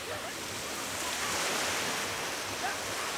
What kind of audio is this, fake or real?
real